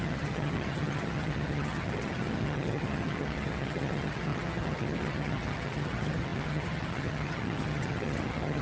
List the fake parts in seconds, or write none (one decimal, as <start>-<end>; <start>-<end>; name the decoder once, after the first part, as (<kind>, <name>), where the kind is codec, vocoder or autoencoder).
0.0-8.6 (vocoder, HiFi-GAN)